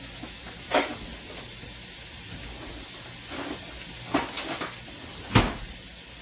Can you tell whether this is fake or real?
real